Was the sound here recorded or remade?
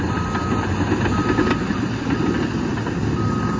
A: recorded